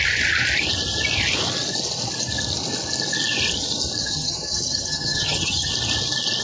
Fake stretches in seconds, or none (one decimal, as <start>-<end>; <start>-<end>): 4.0-5.7